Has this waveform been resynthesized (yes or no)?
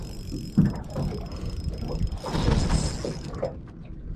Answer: no